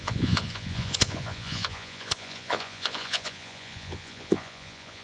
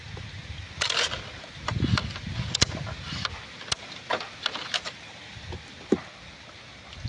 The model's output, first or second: first